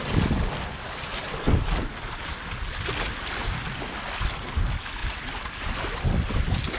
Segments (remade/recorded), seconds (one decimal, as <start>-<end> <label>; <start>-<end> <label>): 0.0-6.8 recorded

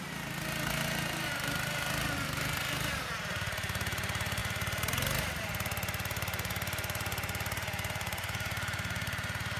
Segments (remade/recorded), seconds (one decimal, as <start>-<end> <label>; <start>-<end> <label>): 0.0-4.4 recorded; 4.4-5.4 remade; 5.4-9.6 recorded

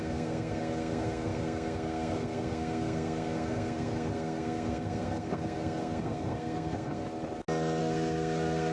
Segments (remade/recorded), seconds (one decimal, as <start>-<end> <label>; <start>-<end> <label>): 0.0-7.0 remade; 7.0-7.8 recorded; 7.8-8.7 remade

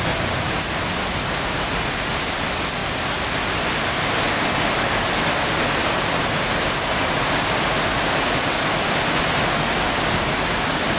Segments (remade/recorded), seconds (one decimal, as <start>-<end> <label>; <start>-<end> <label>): 0.0-11.0 recorded

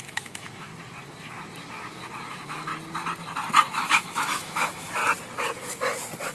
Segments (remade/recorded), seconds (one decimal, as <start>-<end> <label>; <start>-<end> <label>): 0.0-0.7 remade; 0.7-2.3 recorded; 2.3-2.7 remade; 2.7-3.7 recorded; 3.7-5.0 remade; 5.0-6.3 recorded